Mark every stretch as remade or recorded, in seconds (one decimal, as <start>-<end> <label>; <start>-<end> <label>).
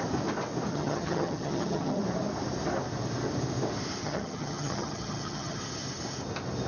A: 0.0-0.7 recorded; 0.7-2.0 remade; 2.0-4.0 recorded; 4.0-5.6 remade; 5.6-6.7 recorded